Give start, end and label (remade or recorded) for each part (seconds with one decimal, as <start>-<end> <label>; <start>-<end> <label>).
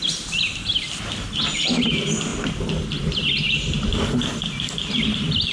0.0-5.5 recorded